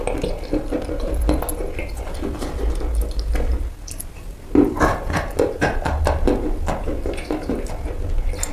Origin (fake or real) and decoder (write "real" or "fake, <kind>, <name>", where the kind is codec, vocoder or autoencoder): real